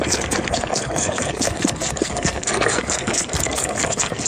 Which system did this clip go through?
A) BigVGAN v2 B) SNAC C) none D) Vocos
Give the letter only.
B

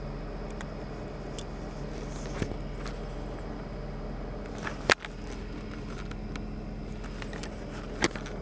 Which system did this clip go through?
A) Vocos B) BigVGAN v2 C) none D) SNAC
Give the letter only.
C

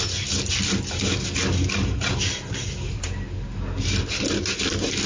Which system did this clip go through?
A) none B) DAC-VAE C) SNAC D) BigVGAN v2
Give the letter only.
A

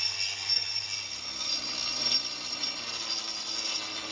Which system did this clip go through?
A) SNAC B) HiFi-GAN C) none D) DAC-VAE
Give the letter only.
C